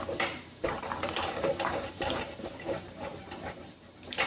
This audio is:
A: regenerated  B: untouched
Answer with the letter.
A